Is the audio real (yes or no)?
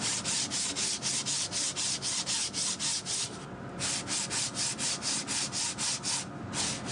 yes